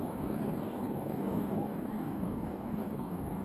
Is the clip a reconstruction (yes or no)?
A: yes